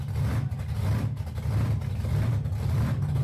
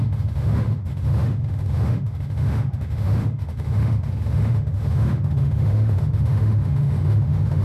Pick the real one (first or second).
first